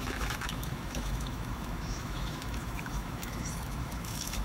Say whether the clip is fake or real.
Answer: fake